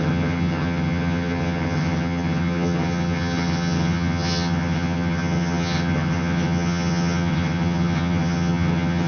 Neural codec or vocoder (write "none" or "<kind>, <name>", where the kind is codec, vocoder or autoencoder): vocoder, HiFi-GAN